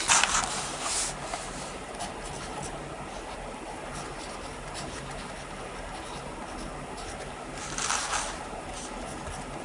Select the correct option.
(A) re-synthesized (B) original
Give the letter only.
B